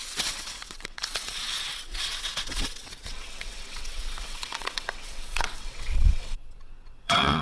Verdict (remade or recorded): remade